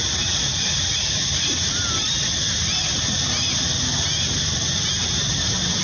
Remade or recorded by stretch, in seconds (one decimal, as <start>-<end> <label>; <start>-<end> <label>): 0.0-1.4 remade; 1.4-5.8 recorded